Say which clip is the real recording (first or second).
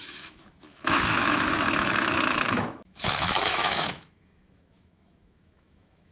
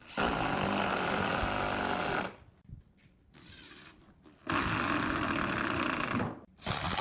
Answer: second